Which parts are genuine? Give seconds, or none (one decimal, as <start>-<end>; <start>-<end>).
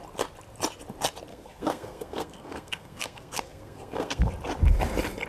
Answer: 0.0-1.3; 4.3-5.3